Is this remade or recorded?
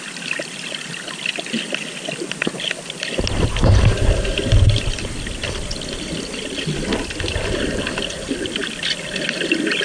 recorded